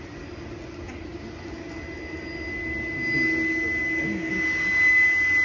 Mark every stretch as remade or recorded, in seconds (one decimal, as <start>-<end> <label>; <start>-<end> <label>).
0.0-5.4 recorded